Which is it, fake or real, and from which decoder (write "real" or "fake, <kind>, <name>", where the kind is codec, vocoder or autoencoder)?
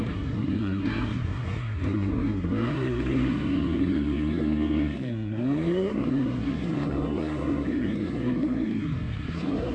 fake, codec, SNAC